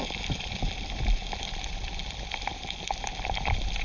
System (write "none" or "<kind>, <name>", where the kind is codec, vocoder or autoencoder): vocoder, BigVGAN v2